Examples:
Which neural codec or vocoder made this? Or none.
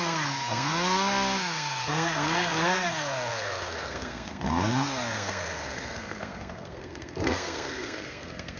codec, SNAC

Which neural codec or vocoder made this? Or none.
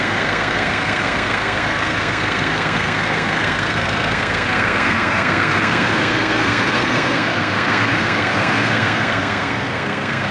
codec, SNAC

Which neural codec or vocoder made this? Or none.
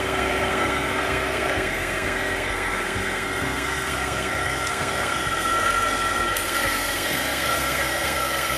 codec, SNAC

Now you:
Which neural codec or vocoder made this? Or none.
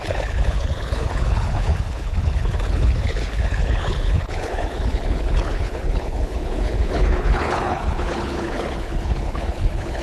codec, HILCodec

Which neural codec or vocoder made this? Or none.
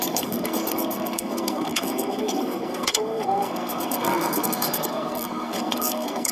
codec, SNAC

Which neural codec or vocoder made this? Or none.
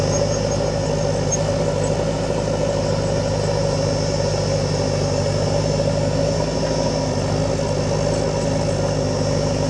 none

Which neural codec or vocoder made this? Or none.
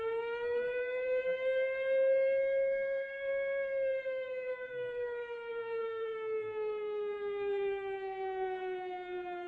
codec, SNAC